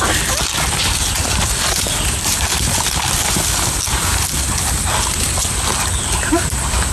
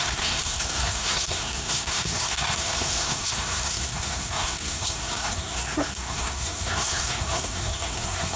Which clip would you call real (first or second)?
first